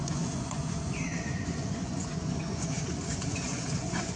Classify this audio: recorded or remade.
remade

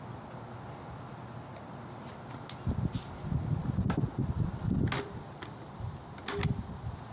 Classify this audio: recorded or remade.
recorded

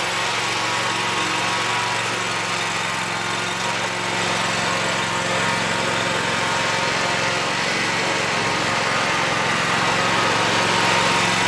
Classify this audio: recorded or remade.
recorded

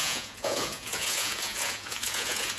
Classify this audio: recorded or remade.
remade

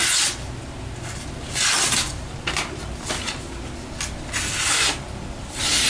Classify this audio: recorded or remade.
recorded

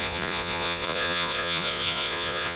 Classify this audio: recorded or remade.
remade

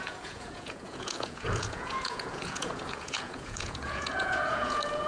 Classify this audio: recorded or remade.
remade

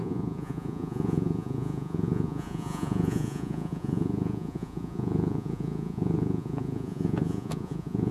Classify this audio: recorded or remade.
remade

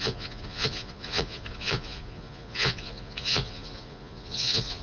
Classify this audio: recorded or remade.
remade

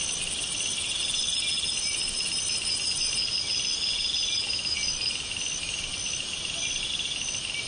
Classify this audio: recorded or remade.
recorded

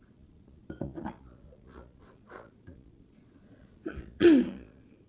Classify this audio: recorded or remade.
remade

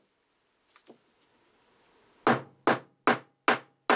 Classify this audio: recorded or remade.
recorded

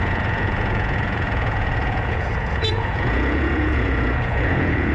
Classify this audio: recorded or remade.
remade